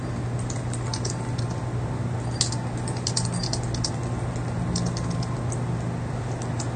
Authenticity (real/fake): real